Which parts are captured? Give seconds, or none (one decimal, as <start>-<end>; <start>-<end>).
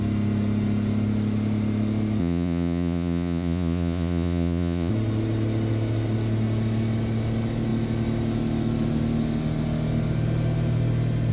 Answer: 0.0-2.2; 4.9-11.3